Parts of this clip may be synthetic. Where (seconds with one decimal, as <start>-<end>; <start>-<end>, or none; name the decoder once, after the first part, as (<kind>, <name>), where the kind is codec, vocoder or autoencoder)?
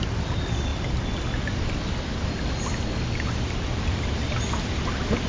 none